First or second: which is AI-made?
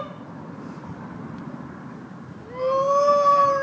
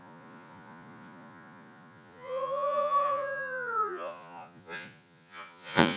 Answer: second